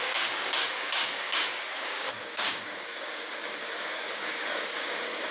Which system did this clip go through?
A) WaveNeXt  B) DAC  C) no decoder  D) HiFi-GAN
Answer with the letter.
B